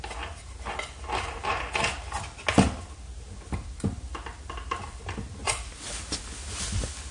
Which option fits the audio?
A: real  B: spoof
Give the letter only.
A